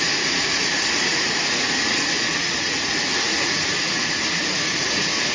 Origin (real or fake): fake